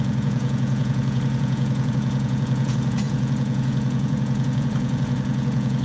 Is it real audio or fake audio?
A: fake